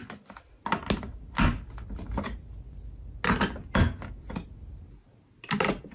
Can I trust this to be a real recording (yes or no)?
yes